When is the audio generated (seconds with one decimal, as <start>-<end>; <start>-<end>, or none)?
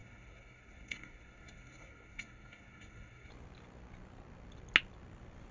0.0-3.3